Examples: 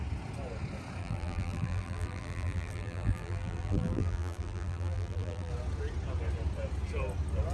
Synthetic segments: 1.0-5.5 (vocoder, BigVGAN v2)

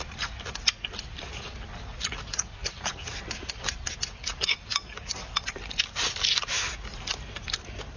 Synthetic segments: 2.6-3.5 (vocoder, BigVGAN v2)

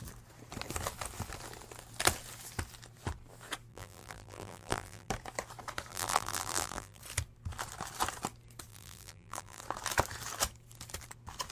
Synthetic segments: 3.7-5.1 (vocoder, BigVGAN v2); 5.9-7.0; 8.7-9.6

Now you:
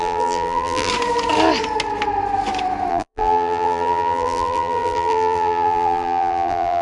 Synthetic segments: 0.0-0.9 (vocoder, BigVGAN v2); 2.9-6.8